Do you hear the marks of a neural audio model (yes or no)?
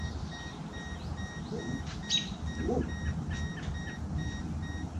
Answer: no